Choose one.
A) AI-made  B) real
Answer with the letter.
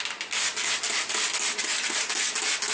B